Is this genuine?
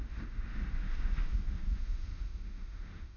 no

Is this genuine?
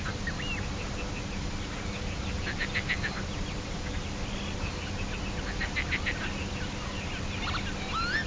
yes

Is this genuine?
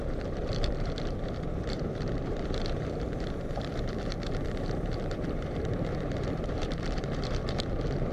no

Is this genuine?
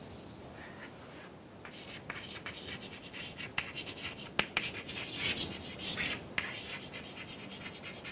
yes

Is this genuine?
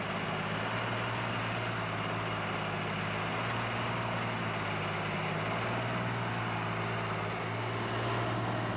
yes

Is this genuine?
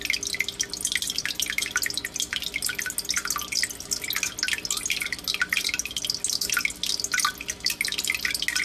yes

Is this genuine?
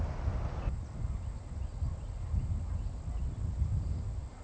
yes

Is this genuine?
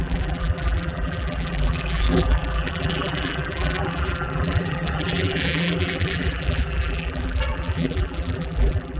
no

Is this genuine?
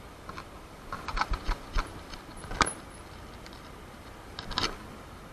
no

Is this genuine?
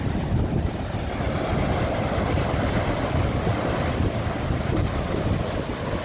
yes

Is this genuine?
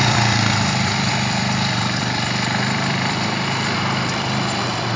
no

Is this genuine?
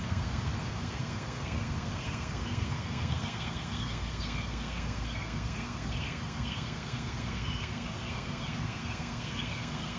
no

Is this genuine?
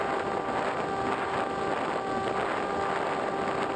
yes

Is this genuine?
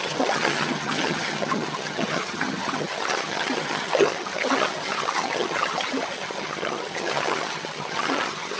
no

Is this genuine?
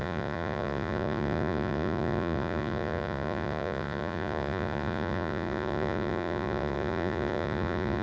no